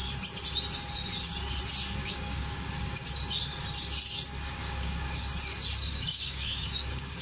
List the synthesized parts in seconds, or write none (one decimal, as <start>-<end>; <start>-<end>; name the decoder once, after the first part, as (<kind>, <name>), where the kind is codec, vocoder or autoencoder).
2.0-3.1 (codec, DAC); 4.6-5.2; 5.9-7.2